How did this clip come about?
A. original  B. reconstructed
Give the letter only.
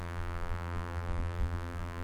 B